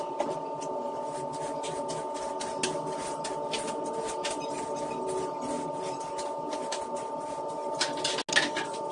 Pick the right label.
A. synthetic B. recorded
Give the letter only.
B